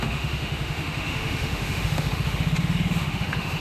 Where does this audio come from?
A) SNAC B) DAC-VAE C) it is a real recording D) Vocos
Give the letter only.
B